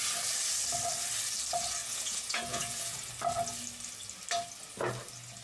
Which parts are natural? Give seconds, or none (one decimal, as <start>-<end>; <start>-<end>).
0.0-1.8; 3.1-5.4